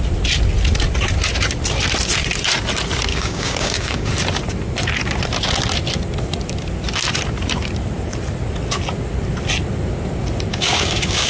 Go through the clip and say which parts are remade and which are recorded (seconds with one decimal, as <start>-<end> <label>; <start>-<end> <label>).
0.0-3.1 recorded; 3.1-4.1 remade; 4.1-10.5 recorded; 10.5-11.3 remade